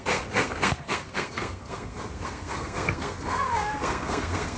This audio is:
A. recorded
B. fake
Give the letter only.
B